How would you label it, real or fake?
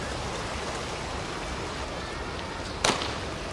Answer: real